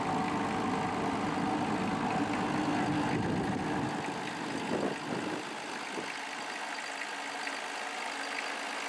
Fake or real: real